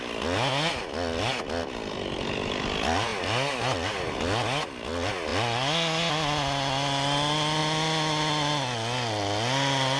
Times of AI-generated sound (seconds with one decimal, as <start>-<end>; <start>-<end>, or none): none